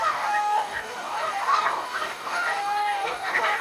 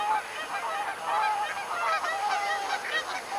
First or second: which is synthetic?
first